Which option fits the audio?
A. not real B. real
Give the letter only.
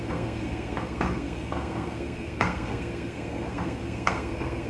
A